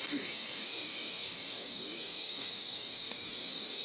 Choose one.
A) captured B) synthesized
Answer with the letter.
B